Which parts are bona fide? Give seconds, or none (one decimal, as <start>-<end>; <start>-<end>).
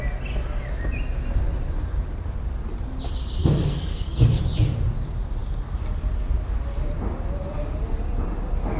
0.0-3.4; 4.4-8.8